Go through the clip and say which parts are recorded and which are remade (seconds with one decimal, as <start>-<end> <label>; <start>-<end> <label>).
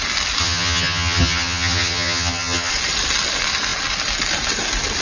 0.0-0.4 recorded; 0.4-2.7 remade; 2.7-5.0 recorded